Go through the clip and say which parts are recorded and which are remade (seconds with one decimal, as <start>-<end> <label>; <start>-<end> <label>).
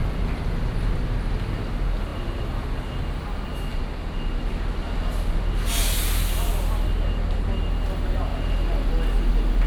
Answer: 0.0-9.7 recorded